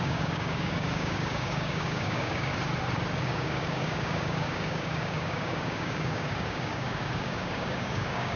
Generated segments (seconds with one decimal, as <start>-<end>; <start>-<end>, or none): 0.0-2.5; 3.2-8.4